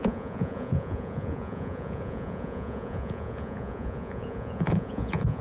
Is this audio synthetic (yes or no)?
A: yes